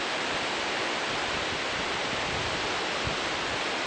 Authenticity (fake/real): real